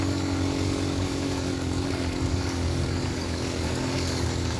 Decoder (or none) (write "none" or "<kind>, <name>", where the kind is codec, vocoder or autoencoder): codec, DAC